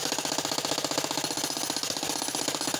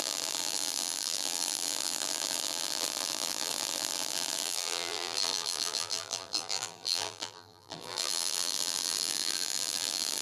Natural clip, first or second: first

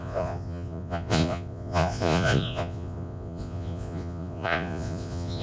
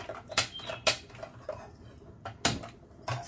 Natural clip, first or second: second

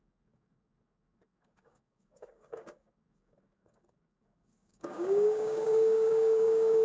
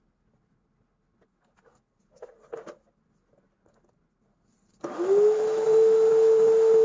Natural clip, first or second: second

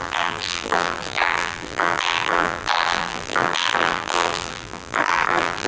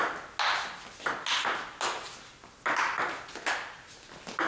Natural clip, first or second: second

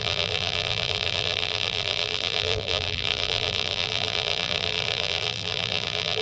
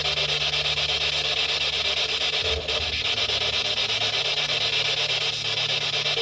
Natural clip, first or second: second